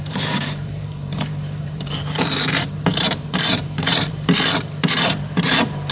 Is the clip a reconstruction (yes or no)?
yes